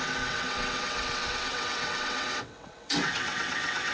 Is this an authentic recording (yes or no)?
no